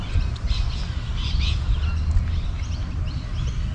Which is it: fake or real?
real